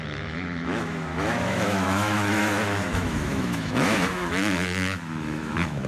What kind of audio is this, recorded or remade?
remade